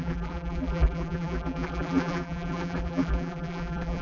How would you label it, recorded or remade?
remade